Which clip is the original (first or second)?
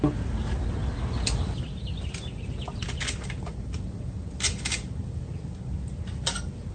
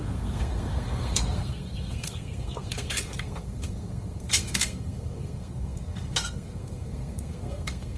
first